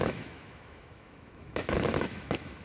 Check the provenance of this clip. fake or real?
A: fake